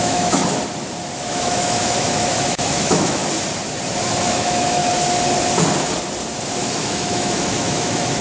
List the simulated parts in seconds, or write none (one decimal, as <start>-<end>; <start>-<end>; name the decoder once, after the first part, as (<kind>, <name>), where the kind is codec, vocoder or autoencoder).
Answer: 0.0-0.4 (autoencoder, DAC-VAE); 1.3-3.2; 4.3-4.8; 6.6-8.2